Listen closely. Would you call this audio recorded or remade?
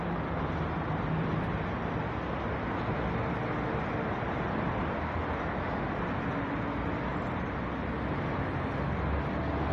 recorded